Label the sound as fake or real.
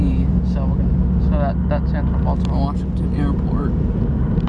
real